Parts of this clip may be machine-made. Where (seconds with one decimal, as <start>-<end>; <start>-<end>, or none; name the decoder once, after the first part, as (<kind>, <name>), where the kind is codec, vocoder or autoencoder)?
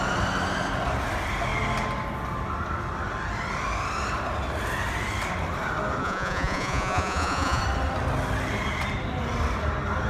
6.0-7.6 (vocoder, Vocos)